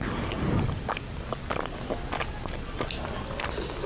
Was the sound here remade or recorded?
recorded